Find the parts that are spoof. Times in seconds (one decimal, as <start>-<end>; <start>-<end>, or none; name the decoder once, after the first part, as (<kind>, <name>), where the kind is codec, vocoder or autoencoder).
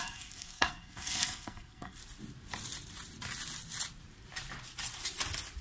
0.0-2.0 (codec, SNAC)